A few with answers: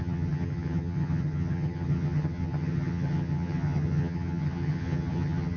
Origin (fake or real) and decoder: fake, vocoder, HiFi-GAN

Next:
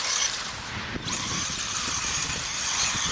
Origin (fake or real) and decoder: fake, vocoder, BigVGAN v2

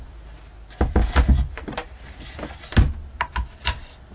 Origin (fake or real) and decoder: real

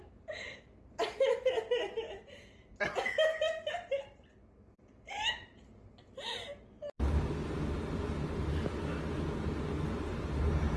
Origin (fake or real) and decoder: real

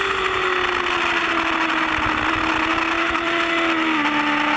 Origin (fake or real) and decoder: real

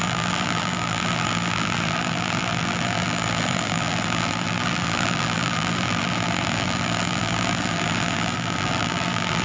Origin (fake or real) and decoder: fake, vocoder, BigVGAN v2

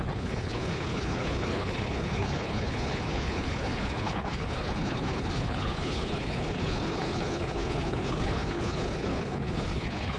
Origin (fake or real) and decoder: fake, codec, HILCodec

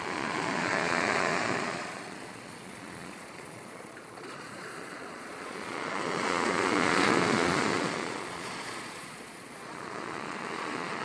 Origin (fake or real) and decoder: fake, vocoder, Vocos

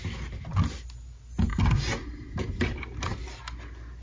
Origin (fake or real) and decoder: real